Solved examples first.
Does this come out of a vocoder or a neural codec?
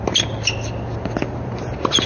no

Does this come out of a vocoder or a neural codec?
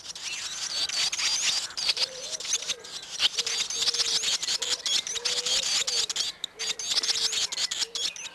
no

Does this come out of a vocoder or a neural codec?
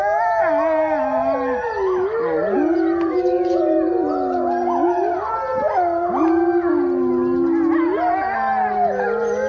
no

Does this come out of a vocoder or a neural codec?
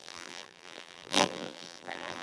yes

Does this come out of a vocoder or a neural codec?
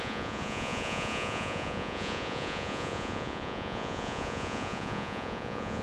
yes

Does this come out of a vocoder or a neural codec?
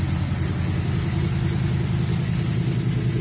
no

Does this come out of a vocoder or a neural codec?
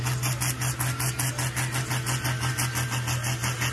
no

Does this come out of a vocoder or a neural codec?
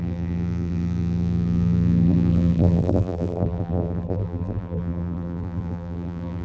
yes